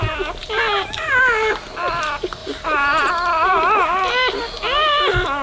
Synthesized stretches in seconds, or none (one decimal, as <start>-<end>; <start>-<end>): 2.4-3.1